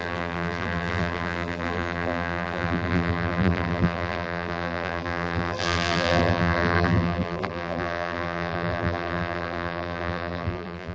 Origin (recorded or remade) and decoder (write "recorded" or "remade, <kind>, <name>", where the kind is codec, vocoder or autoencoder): remade, vocoder, BigVGAN v2